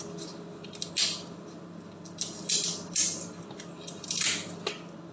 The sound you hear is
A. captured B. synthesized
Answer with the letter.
A